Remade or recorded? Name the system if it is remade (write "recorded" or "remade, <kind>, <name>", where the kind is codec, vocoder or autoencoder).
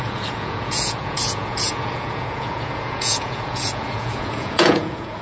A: remade, vocoder, Vocos